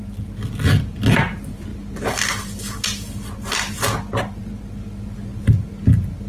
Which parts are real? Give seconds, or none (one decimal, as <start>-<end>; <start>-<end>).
0.0-6.3